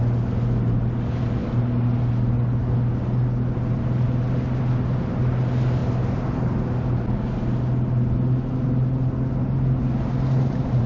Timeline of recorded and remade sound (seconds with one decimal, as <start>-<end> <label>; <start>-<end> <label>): 0.0-10.9 recorded